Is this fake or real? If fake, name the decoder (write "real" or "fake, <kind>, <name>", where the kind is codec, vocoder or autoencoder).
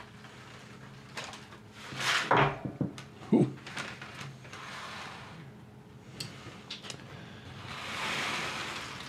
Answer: real